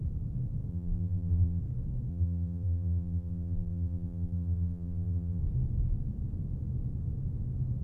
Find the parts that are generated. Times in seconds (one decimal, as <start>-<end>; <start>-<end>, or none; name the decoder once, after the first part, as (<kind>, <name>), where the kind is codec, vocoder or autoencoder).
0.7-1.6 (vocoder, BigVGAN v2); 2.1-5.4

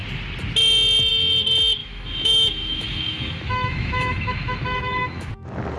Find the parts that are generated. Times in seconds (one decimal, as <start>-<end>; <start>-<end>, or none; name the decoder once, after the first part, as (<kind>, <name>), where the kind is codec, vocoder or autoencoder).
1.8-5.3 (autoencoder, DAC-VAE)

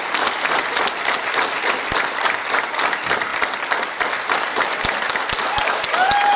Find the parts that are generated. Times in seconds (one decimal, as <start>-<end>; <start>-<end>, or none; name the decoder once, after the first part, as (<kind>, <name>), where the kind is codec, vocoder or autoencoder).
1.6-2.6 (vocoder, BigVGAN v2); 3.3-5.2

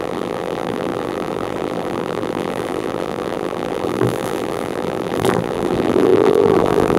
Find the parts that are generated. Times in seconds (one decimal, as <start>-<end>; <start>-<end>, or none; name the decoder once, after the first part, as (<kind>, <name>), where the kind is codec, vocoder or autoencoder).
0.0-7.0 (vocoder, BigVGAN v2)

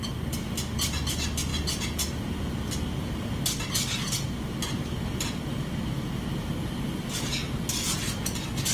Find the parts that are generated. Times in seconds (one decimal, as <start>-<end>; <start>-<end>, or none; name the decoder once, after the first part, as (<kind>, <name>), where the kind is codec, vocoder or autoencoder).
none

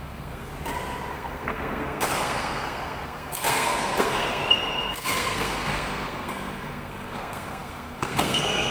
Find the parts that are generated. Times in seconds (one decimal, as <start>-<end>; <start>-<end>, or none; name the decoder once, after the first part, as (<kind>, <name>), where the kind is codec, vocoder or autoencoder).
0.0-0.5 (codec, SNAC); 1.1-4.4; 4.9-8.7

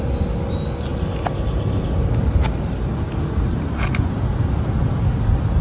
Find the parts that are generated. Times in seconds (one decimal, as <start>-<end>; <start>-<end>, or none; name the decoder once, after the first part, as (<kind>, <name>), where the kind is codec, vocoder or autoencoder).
none